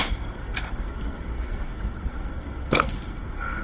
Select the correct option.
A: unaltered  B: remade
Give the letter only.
B